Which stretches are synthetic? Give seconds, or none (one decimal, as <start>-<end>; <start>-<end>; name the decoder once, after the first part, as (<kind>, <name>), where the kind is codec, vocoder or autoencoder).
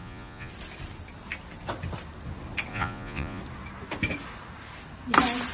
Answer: 0.0-0.5 (vocoder, Vocos); 2.7-3.4